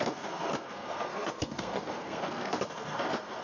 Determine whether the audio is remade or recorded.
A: remade